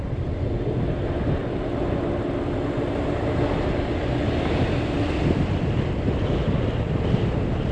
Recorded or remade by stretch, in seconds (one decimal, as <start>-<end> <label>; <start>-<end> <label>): 0.0-7.7 recorded